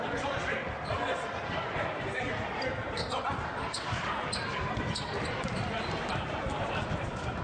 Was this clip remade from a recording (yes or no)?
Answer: no